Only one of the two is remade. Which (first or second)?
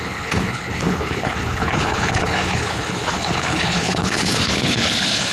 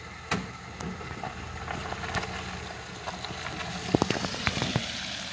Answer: first